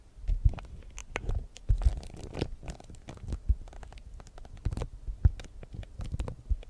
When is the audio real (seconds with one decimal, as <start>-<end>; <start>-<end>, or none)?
0.0-6.7